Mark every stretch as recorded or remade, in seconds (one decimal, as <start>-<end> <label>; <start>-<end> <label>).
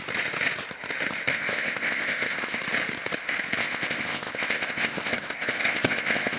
0.0-1.3 recorded; 1.3-2.6 remade; 2.6-3.6 recorded; 3.6-6.4 remade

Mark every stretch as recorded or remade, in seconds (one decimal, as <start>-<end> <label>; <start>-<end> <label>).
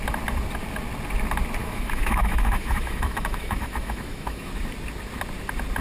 0.0-1.6 recorded; 1.6-4.5 remade; 4.5-5.8 recorded